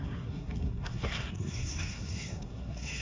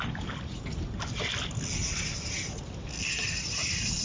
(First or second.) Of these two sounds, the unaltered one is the second